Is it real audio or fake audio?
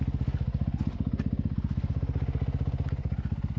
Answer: real